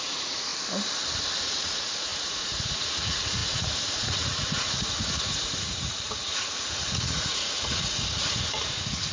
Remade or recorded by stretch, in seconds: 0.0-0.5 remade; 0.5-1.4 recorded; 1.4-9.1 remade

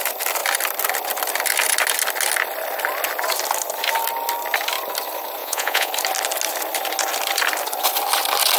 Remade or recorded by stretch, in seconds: 0.0-5.4 recorded; 5.4-5.9 remade; 5.9-8.6 recorded

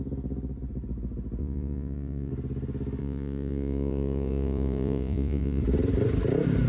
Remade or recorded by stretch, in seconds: 0.0-1.4 recorded; 1.4-2.3 remade; 2.3-3.0 recorded; 3.0-5.6 remade; 5.6-6.7 recorded

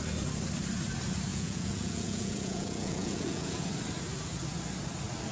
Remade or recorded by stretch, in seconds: 0.0-1.3 recorded; 1.3-3.7 remade; 3.7-5.3 recorded